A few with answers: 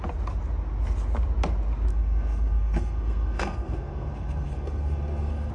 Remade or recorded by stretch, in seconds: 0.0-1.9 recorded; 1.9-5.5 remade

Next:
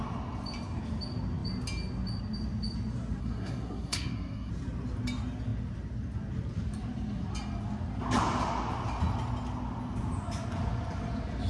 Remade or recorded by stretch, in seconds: 0.0-3.2 recorded; 3.2-4.5 remade; 4.5-11.5 recorded

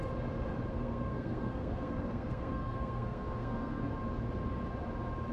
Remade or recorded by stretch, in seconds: 0.0-0.7 recorded; 0.7-3.9 remade; 3.9-5.3 recorded

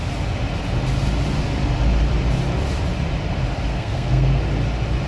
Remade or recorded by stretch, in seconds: 0.0-3.7 recorded; 3.7-4.4 remade; 4.4-5.1 recorded

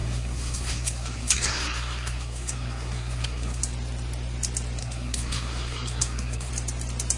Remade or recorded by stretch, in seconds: 0.0-3.6 remade; 3.6-4.8 recorded; 4.8-6.5 remade; 6.5-7.2 recorded

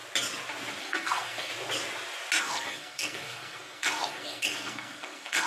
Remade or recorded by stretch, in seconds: 0.0-0.8 recorded; 0.8-1.5 remade; 1.5-2.4 recorded; 2.4-5.5 remade

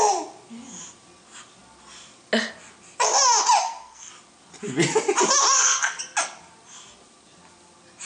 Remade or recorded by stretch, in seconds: 0.0-3.6 recorded; 3.6-4.1 remade; 4.1-5.5 recorded; 5.5-6.0 remade; 6.0-8.1 recorded

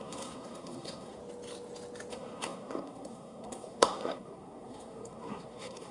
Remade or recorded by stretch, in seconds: 0.0-1.2 remade; 1.2-2.1 recorded; 2.1-5.9 remade